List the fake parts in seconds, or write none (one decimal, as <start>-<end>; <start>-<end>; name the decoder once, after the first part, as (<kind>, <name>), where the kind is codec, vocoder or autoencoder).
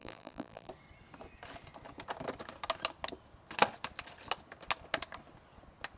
0.0-0.7 (vocoder, BigVGAN v2)